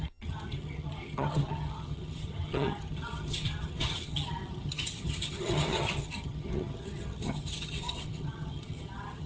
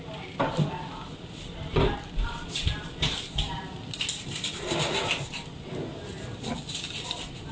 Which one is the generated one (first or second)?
first